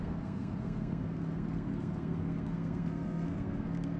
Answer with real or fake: fake